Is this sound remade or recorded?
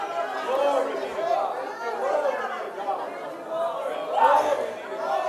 recorded